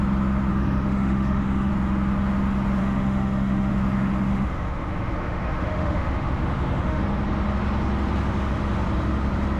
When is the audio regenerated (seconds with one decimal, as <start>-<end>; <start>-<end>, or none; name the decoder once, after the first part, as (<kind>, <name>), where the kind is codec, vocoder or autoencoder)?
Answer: 0.5-1.7 (autoencoder, DAC-VAE); 2.8-3.7; 4.3-7.0